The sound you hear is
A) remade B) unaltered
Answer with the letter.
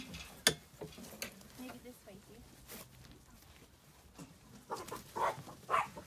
B